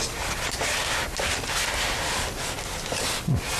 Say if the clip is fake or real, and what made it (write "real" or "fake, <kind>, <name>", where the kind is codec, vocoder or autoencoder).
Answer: real